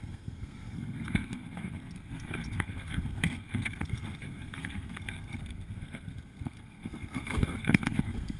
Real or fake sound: fake